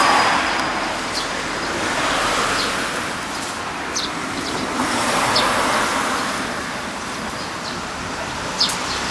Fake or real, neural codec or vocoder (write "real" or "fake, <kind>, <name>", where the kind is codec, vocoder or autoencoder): fake, vocoder, BigVGAN v2